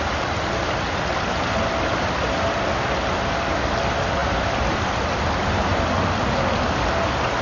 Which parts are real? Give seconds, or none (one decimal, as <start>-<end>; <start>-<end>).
0.0-4.2; 6.3-7.4

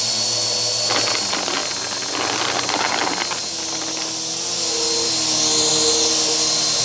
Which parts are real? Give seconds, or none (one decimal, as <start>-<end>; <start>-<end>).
0.0-6.8

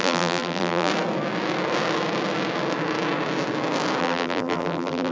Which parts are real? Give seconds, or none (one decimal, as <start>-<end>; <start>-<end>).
0.9-4.0

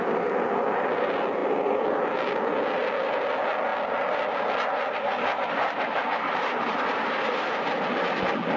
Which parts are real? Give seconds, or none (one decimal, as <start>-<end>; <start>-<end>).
0.0-6.1; 7.5-8.6

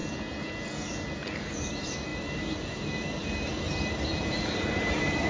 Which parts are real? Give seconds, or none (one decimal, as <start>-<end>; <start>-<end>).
0.0-1.4

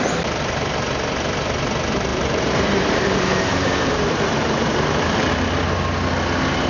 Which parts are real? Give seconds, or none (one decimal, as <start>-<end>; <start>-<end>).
0.0-2.1; 5.3-6.7

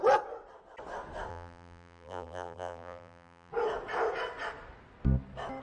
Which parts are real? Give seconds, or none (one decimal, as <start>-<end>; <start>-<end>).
0.0-1.3; 3.5-5.6

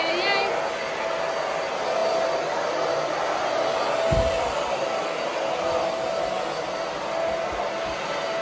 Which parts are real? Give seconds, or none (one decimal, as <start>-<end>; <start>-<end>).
0.0-8.4